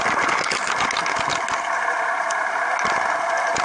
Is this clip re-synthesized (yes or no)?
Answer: no